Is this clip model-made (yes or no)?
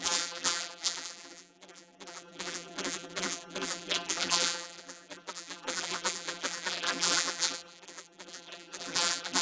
yes